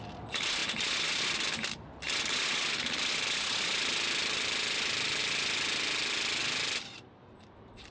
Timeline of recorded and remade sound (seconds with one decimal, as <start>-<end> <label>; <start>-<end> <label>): 0.0-7.9 recorded